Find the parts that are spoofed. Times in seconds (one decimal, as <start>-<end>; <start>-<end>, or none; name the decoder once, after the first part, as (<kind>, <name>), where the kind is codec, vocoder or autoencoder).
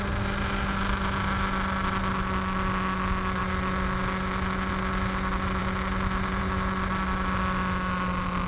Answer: none